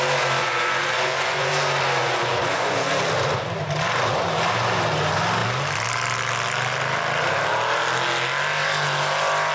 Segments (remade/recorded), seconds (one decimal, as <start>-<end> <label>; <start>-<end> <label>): 0.0-0.4 recorded; 0.4-1.5 remade; 1.5-2.0 recorded; 2.0-2.9 remade; 2.9-9.5 recorded